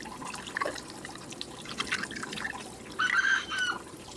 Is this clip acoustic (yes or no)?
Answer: yes